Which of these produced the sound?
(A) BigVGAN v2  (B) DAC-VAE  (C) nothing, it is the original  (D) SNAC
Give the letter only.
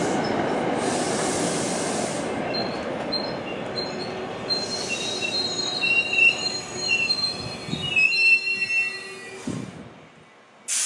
C